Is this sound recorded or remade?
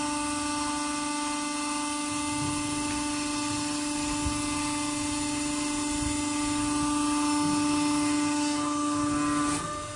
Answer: recorded